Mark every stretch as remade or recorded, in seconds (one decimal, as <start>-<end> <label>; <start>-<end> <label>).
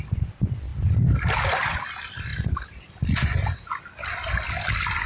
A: 0.0-5.1 recorded